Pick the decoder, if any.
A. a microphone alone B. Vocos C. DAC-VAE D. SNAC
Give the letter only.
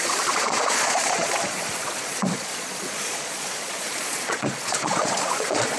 B